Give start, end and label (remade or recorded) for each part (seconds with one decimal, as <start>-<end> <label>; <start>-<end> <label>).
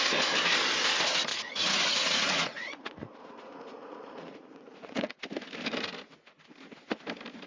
0.0-1.3 recorded; 1.3-5.2 remade; 5.2-7.5 recorded